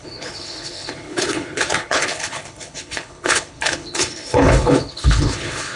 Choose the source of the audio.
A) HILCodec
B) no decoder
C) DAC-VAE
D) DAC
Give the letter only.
A